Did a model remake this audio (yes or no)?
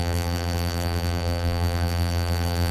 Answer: yes